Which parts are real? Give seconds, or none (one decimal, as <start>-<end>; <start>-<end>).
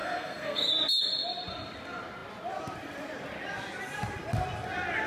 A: 0.7-5.1